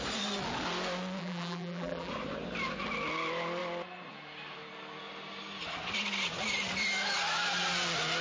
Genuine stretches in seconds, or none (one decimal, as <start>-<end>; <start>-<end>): 0.0-1.2; 2.1-8.2

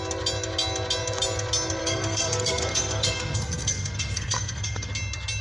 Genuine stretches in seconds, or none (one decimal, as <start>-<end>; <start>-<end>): 0.0-1.8; 4.9-5.4

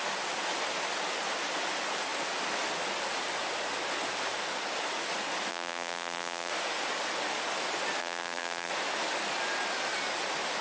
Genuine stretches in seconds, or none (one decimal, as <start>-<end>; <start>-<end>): 0.0-5.5; 6.5-8.0; 8.7-10.6

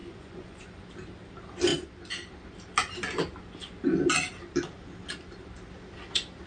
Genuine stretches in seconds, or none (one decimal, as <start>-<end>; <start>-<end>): 0.8-6.5

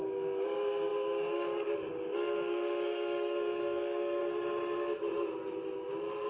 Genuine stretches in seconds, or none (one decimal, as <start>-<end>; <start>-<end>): 4.2-6.3

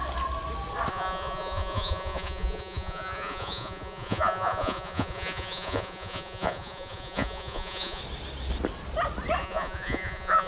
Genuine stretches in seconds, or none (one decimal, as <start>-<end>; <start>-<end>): 0.0-0.9; 8.0-9.4

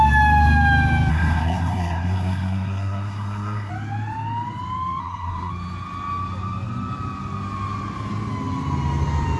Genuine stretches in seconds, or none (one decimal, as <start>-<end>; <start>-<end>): 0.0-1.1; 3.7-5.0; 5.5-9.4

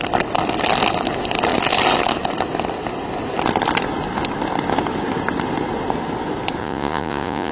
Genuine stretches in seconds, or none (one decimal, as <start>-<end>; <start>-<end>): 0.0-6.6